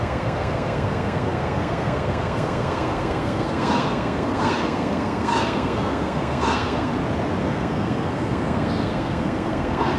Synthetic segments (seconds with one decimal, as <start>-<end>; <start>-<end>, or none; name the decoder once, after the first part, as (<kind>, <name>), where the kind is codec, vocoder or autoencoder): 0.0-6.9 (codec, SNAC); 7.4-10.0